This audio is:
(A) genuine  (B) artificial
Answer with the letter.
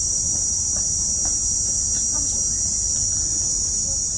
A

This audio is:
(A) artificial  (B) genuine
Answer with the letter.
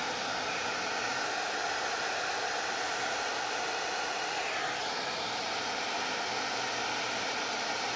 B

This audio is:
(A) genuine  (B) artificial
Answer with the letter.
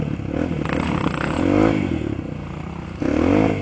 A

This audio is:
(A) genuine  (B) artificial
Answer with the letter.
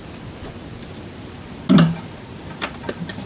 A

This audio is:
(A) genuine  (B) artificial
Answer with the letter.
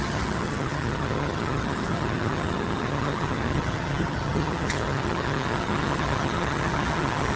B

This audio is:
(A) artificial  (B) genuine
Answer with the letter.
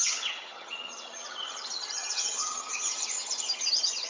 A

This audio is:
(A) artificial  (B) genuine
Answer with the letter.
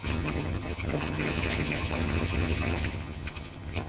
A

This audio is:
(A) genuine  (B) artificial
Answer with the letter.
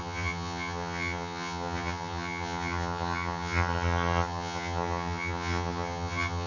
B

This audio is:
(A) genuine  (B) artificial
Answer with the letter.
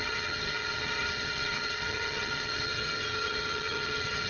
B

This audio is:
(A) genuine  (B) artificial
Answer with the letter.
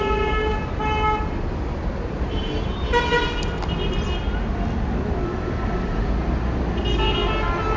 A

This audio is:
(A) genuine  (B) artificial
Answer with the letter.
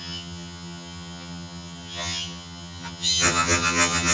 B